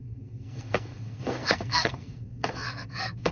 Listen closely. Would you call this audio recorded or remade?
remade